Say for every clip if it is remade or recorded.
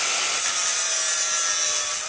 recorded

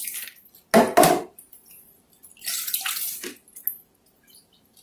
recorded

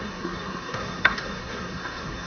remade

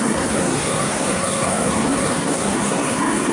remade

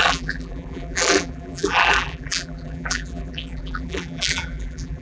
remade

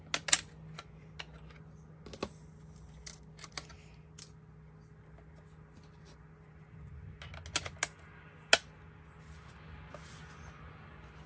recorded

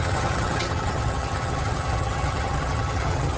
remade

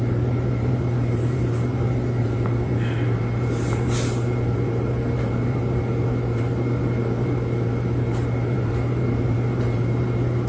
remade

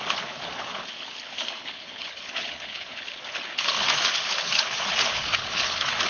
remade